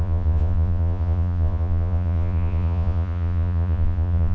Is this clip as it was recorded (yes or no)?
no